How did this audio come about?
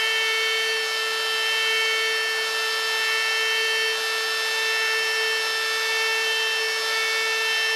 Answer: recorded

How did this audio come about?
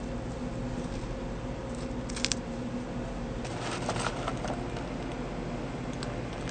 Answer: recorded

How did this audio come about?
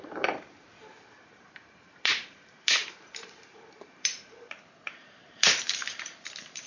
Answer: remade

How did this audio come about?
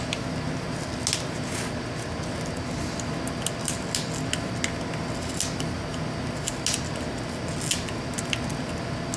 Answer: recorded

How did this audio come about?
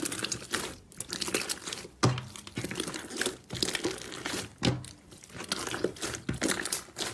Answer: recorded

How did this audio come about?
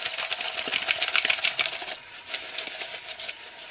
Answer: recorded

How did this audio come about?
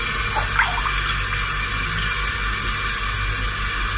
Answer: recorded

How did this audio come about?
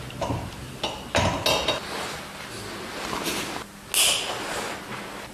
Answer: recorded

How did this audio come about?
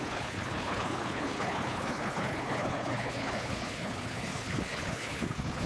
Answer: remade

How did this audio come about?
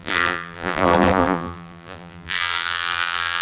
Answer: remade